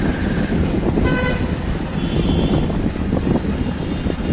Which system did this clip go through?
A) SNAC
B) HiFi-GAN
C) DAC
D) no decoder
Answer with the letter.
D